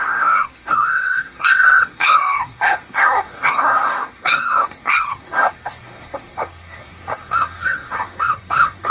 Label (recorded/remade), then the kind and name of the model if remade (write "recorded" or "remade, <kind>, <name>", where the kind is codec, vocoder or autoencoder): remade, codec, SNAC